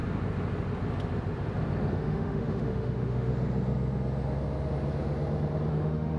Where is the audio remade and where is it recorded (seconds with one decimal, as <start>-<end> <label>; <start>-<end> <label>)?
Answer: 0.0-1.9 recorded; 1.9-3.3 remade; 3.3-5.7 recorded; 5.7-6.2 remade